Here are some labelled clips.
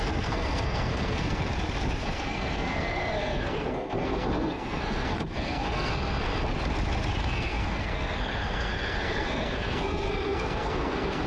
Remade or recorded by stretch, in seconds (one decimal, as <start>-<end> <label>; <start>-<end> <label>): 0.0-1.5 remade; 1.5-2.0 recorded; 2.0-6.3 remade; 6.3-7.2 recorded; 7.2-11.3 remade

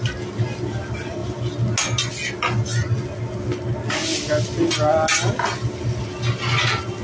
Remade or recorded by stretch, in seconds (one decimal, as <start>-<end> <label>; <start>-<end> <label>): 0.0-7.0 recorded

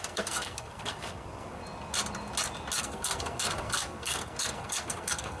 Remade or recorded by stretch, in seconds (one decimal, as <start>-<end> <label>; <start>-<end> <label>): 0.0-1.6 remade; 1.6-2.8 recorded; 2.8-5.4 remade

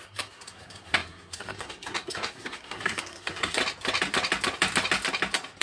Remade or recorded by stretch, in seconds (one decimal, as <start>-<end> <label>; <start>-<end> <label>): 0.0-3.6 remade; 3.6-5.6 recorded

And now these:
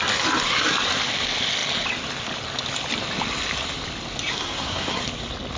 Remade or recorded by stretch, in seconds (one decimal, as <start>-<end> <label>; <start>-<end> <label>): 0.0-4.3 recorded; 4.3-5.0 remade; 5.0-5.6 recorded

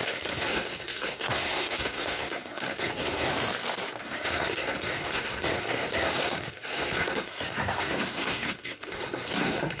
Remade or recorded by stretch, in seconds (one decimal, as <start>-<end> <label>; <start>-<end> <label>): 0.0-3.3 remade; 3.3-4.0 recorded; 4.0-9.8 remade